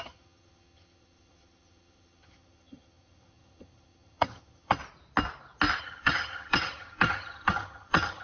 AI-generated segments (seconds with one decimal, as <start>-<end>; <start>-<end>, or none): 0.0-4.8; 5.8-8.2